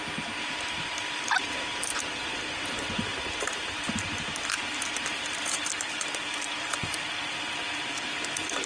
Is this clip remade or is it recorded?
remade